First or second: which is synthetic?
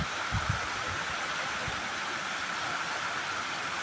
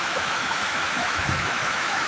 second